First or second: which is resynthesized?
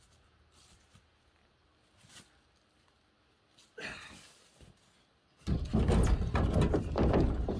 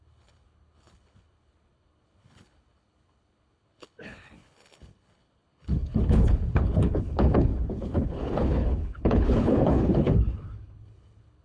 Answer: second